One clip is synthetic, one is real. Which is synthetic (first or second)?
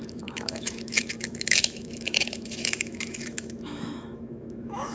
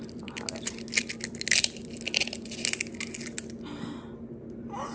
first